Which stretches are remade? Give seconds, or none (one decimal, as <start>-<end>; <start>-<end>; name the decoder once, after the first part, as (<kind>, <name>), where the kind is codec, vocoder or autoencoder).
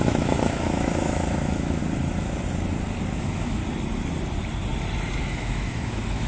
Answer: 0.0-1.8 (autoencoder, DAC-VAE); 3.2-3.6; 5.2-6.3